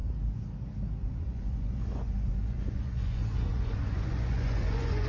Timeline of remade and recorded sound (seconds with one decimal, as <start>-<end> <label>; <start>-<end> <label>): 0.0-1.0 recorded; 1.0-5.1 remade